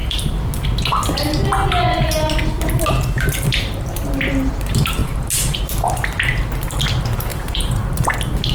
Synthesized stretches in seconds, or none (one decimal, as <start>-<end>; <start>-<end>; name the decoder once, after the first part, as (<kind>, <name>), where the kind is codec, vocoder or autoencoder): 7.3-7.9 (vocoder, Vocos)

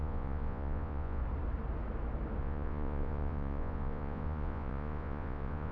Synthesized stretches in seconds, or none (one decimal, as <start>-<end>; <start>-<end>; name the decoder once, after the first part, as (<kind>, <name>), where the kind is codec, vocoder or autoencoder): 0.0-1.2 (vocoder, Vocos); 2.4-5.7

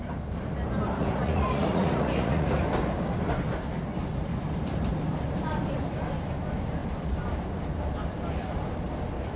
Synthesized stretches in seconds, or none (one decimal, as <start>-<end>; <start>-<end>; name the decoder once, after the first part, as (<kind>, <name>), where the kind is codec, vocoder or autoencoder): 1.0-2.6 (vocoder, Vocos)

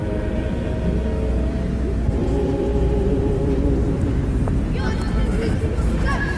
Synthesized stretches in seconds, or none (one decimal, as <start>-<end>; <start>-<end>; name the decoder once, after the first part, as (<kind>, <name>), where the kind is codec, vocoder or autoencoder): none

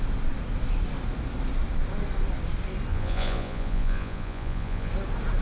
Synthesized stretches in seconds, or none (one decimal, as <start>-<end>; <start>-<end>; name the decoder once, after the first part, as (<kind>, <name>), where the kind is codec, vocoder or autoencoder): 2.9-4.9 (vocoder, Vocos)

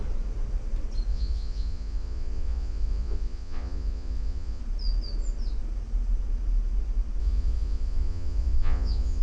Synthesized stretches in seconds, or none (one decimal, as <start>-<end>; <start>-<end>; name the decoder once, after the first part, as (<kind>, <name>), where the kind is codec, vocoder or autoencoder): 1.1-4.6 (vocoder, Vocos); 7.2-9.2

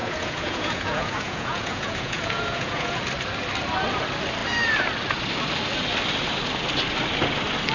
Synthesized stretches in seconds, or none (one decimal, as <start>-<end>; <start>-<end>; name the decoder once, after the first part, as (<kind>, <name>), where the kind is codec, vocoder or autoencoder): 0.0-3.0 (vocoder, Vocos)